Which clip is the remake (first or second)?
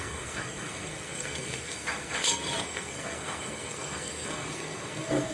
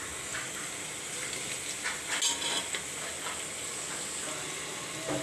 first